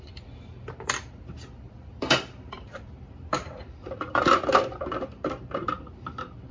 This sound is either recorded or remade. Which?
remade